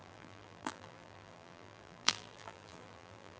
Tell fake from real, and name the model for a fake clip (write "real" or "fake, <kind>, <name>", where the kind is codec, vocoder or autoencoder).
fake, vocoder, BigVGAN v2